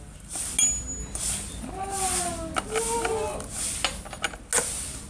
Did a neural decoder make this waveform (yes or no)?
no